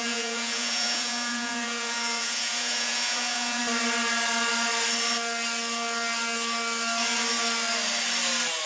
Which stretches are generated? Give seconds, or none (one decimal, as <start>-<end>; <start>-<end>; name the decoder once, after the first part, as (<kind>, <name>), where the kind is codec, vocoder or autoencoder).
0.0-3.6 (vocoder, Vocos)